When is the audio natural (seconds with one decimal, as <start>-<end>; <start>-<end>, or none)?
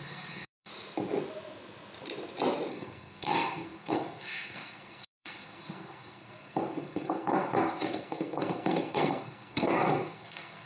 0.7-2.7